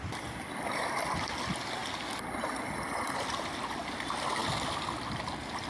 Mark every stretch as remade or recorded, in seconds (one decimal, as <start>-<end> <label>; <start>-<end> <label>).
0.0-5.7 recorded